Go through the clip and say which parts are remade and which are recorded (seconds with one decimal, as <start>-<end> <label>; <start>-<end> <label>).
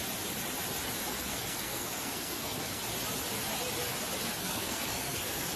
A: 0.0-1.1 recorded; 1.1-2.8 remade; 2.8-4.4 recorded; 4.4-5.6 remade